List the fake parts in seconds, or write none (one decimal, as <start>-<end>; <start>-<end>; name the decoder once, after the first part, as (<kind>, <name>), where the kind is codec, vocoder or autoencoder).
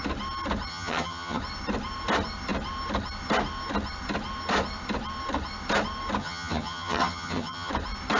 0.7-1.4 (vocoder, HiFi-GAN); 6.2-7.7